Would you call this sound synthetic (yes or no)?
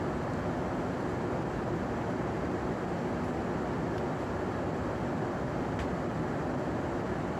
no